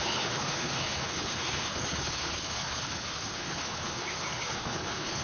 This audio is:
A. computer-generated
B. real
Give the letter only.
A